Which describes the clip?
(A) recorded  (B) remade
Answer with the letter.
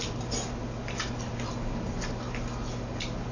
A